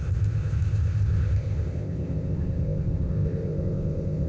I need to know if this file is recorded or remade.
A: remade